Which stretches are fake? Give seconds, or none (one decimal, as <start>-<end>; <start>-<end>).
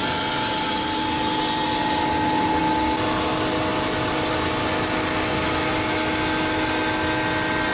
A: 1.6-2.6